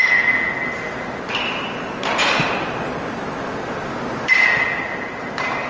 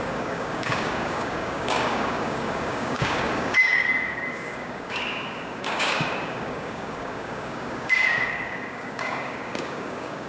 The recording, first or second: first